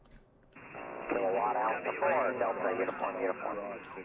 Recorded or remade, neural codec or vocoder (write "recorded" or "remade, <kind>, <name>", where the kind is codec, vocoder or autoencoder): remade, vocoder, Vocos